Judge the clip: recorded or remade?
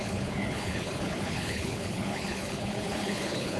remade